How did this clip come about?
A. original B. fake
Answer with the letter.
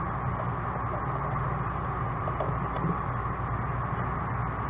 A